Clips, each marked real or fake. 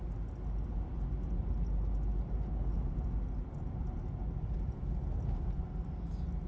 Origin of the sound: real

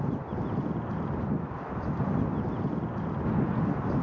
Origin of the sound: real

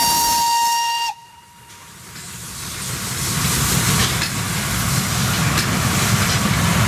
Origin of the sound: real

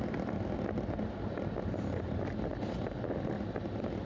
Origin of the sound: real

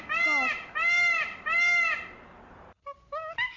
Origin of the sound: real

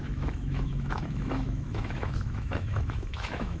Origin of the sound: fake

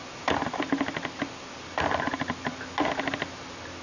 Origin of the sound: real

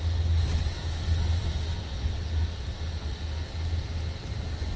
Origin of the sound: real